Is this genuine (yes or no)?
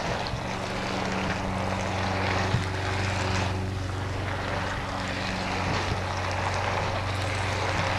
yes